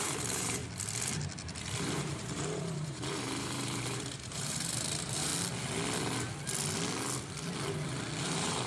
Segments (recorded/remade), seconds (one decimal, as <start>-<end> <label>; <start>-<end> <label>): 0.0-0.6 remade; 0.6-1.8 recorded; 1.8-5.3 remade; 5.3-8.2 recorded; 8.2-8.7 remade